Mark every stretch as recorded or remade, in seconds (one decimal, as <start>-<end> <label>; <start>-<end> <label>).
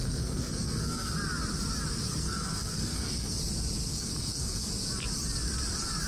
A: 0.0-1.1 remade; 1.1-2.1 recorded; 2.1-3.4 remade; 3.4-3.9 recorded; 3.9-4.7 remade; 4.7-6.1 recorded